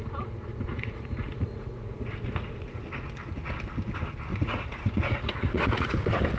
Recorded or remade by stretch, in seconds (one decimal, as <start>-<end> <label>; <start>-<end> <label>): 0.0-0.7 recorded; 0.7-2.8 remade; 2.8-4.3 recorded; 4.3-5.9 remade; 5.9-6.4 recorded